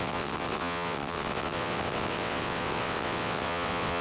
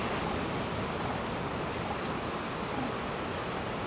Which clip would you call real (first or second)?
second